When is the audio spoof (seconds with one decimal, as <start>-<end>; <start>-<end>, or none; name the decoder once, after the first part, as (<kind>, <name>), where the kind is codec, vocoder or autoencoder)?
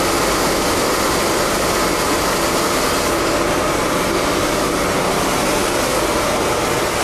none